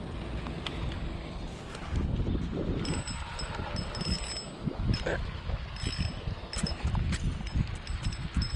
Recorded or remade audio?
recorded